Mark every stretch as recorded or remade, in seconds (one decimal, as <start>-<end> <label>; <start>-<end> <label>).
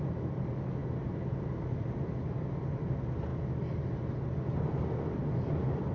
0.0-5.9 recorded